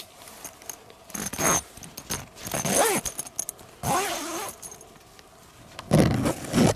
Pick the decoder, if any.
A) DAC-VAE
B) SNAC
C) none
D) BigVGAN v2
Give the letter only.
C